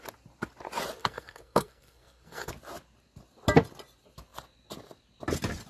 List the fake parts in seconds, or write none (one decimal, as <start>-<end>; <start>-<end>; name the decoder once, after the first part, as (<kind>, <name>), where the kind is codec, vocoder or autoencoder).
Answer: 1.0-2.5 (codec, SNAC)